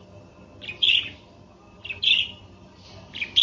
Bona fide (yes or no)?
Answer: yes